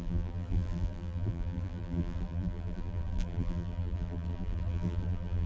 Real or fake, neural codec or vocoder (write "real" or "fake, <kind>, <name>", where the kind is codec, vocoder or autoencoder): fake, vocoder, BigVGAN v2